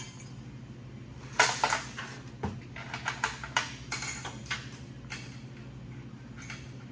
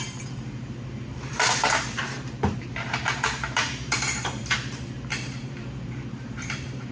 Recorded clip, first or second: first